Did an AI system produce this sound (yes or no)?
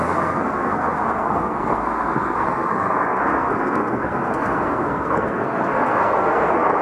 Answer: yes